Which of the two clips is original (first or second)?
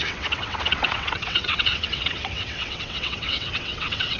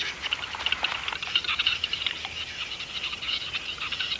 second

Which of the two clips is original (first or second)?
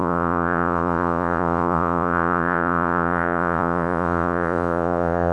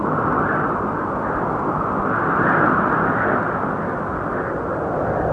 second